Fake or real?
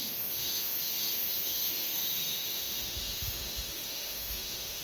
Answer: fake